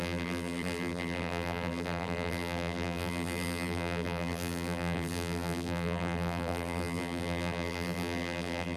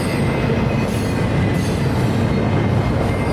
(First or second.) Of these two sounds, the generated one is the first